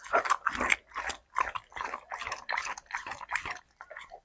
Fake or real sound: real